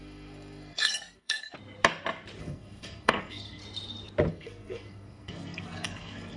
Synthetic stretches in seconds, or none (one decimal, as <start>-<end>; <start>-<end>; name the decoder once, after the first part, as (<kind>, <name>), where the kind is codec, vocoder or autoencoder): 0.0-1.5 (codec, SNAC); 2.4-3.6; 4.3-6.4